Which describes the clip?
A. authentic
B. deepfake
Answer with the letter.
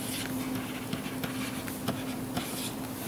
A